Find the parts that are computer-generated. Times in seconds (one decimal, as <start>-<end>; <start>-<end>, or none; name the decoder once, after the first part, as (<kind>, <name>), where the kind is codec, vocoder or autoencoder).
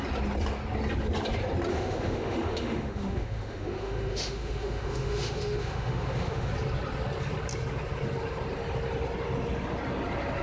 1.7-6.5 (autoencoder, DAC-VAE)